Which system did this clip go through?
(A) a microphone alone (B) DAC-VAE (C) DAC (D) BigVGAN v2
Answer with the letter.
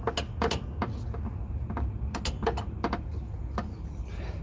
A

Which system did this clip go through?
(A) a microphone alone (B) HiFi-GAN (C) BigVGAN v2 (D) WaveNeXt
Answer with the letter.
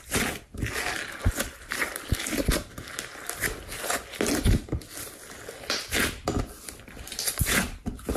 A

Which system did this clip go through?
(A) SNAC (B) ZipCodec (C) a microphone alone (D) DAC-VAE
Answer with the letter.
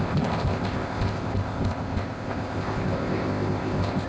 B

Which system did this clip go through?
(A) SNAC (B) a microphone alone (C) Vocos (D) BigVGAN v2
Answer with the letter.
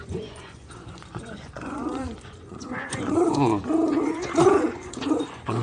C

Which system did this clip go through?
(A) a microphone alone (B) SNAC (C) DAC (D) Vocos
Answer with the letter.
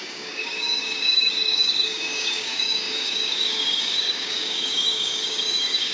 C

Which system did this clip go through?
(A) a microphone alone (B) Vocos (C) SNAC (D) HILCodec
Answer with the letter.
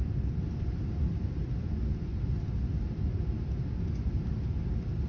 A